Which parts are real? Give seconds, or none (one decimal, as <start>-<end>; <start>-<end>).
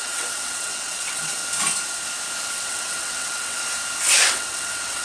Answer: 1.4-2.5; 3.6-4.3